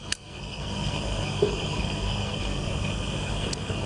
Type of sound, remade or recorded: remade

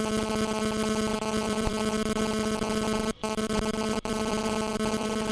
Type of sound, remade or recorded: remade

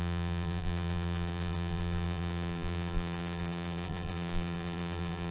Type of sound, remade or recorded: remade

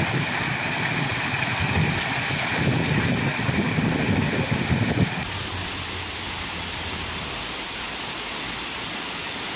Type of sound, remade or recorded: recorded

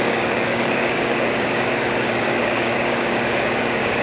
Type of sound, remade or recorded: remade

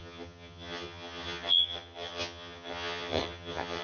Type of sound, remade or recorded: remade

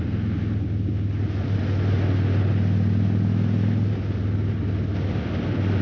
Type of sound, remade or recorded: recorded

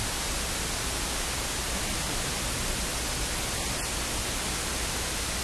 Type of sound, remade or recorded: recorded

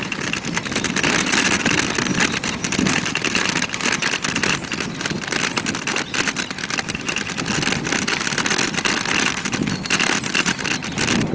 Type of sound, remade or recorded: remade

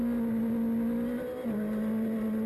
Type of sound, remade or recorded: recorded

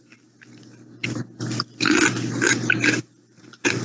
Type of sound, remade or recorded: recorded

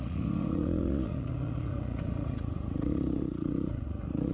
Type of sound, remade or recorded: remade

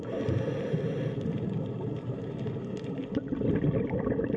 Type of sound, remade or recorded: remade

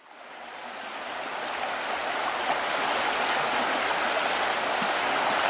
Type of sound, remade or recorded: recorded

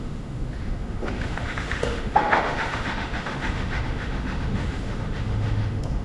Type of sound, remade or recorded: remade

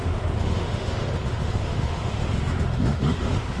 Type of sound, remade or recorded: remade